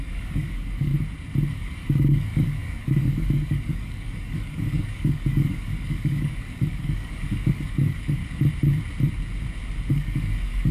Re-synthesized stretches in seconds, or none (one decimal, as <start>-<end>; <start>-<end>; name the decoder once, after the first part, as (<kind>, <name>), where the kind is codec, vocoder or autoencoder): 0.0-0.9 (codec, DAC); 1.5-8.2; 9.9-10.7